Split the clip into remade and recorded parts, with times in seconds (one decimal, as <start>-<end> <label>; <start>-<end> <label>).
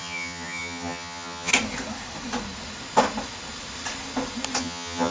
0.0-1.5 remade; 1.5-4.6 recorded; 4.6-5.1 remade